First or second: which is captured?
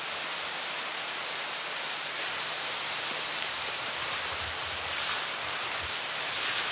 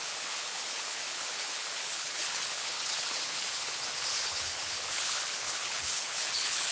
first